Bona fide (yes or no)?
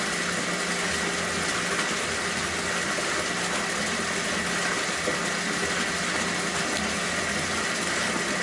yes